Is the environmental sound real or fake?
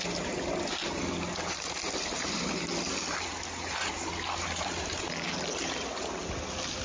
real